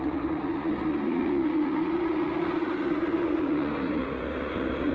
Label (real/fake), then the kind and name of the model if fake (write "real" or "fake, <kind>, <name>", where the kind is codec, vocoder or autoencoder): fake, vocoder, Vocos